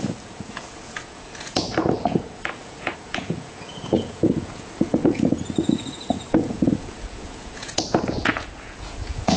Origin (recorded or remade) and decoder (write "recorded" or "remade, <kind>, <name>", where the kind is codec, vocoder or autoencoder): remade, vocoder, Vocos